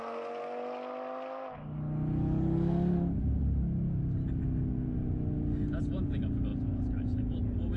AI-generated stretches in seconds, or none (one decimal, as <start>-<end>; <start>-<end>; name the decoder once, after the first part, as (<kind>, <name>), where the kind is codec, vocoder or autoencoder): none